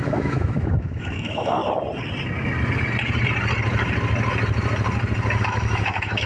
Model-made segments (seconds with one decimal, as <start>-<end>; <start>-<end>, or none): 0.0-1.6; 5.4-6.3